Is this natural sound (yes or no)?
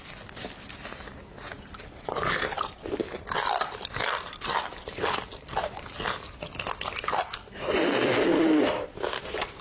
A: yes